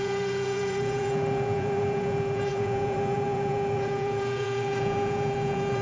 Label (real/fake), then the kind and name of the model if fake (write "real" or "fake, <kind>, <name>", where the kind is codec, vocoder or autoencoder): fake, vocoder, Vocos